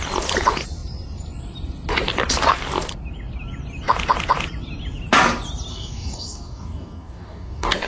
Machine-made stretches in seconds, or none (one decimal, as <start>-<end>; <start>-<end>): 5.7-7.9